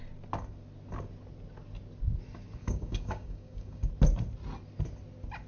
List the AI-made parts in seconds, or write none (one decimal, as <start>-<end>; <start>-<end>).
2.6-3.9